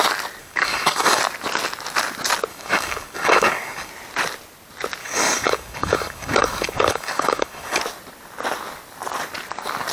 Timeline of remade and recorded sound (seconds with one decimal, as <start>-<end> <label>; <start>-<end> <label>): 0.0-0.4 recorded; 0.4-1.2 remade; 1.2-2.5 recorded; 2.5-3.9 remade; 3.9-5.0 recorded; 5.0-7.8 remade; 7.8-9.9 recorded